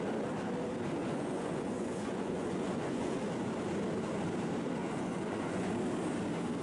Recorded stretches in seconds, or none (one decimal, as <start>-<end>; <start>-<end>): 0.0-1.0; 3.2-4.8; 5.7-6.6

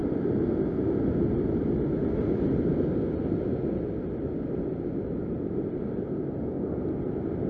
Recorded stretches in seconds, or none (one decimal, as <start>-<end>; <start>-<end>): 0.0-7.5

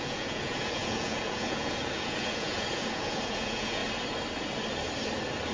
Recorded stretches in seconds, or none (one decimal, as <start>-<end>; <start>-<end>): 3.8-5.5

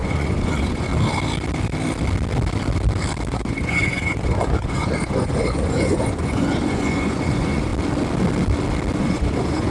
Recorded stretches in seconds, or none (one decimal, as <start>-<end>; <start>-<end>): 0.9-3.3; 7.7-9.0